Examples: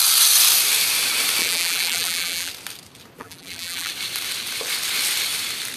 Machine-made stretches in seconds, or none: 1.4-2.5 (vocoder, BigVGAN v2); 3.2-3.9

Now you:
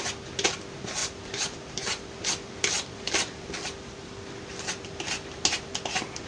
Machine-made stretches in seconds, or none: 1.0-4.8 (vocoder, BigVGAN v2)

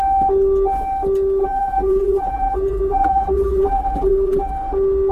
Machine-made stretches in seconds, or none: 1.4-4.5 (vocoder, BigVGAN v2)

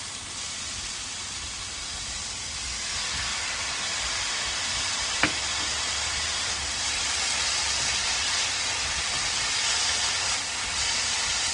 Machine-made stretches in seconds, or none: 3.3-4.0 (vocoder, BigVGAN v2)

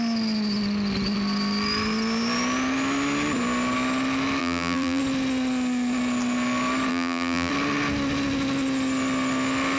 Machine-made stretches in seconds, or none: 4.4-5.0 (vocoder, BigVGAN v2); 6.9-7.5

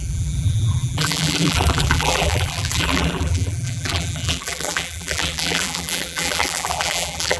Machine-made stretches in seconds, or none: 0.0-7.4 (vocoder, BigVGAN v2)